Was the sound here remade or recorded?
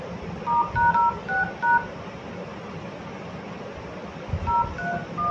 recorded